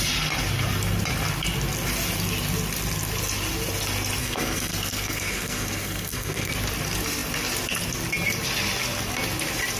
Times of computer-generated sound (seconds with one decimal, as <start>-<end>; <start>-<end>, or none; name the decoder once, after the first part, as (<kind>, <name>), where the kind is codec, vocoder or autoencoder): 4.2-6.5 (codec, SNAC)